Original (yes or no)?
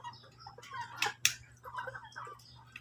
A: yes